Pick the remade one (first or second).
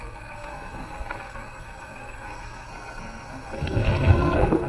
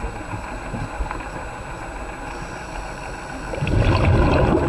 first